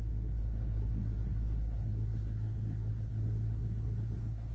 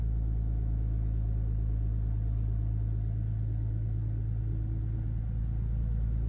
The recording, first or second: second